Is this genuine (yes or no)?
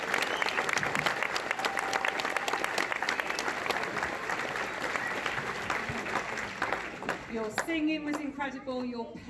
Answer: yes